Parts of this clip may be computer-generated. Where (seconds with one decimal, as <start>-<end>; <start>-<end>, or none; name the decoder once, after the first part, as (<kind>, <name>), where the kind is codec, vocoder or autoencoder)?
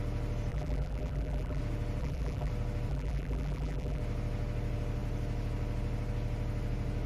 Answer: 0.5-1.6 (vocoder, BigVGAN v2); 2.0-2.5; 2.9-4.0